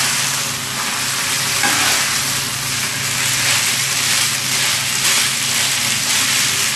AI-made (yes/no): no